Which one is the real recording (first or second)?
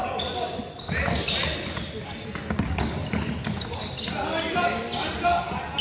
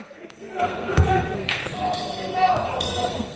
first